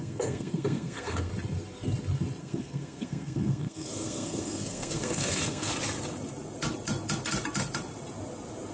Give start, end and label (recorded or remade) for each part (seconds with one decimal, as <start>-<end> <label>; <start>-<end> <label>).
0.0-1.3 remade; 1.3-2.4 recorded; 2.4-5.7 remade; 5.7-8.7 recorded